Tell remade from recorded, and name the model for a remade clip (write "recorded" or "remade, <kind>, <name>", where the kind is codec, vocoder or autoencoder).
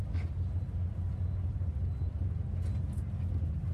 recorded